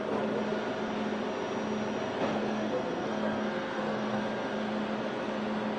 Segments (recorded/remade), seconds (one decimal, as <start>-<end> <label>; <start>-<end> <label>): 0.0-2.3 recorded; 2.3-4.2 remade; 4.2-5.8 recorded